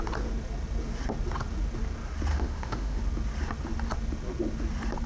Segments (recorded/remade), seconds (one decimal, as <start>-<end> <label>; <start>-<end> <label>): 0.0-2.3 recorded; 2.3-3.0 remade; 3.0-5.1 recorded